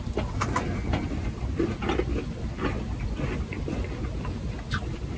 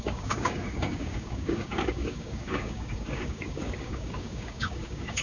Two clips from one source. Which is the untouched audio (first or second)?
first